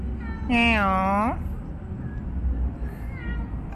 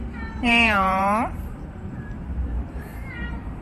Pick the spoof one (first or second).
second